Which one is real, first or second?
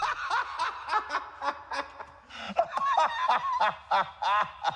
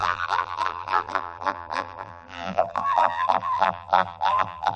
first